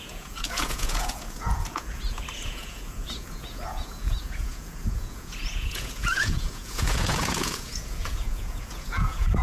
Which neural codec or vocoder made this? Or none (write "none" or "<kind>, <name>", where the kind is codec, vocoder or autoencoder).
vocoder, Vocos